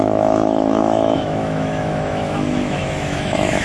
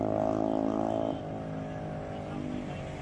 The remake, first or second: first